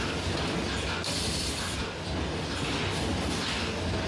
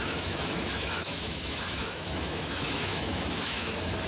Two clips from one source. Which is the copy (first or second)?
second